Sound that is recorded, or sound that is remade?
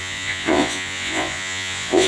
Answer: remade